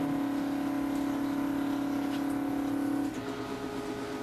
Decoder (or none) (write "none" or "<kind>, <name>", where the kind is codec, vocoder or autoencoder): none